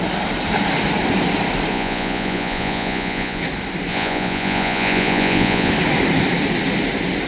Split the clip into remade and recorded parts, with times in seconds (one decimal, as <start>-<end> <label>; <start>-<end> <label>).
0.0-1.7 recorded; 1.7-3.4 remade; 3.4-3.9 recorded; 3.9-5.7 remade; 5.7-7.3 recorded